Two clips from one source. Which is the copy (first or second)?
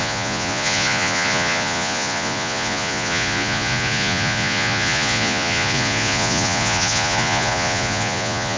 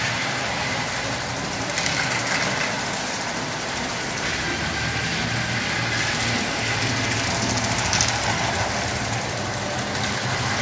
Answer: first